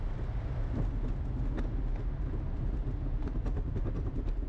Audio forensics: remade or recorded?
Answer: recorded